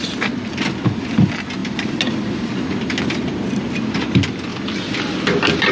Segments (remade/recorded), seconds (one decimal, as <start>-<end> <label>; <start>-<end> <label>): 0.0-5.7 recorded